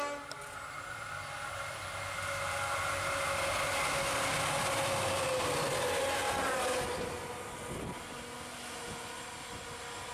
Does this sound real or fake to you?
real